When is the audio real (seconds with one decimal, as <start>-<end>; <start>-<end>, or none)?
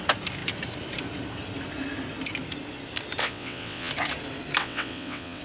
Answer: 0.0-3.2; 3.9-4.6